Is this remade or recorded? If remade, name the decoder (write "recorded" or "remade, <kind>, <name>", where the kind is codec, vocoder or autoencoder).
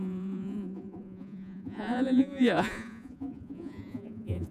remade, vocoder, Vocos